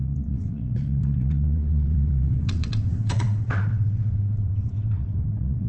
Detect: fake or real fake